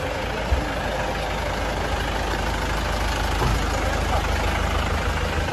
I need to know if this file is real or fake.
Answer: real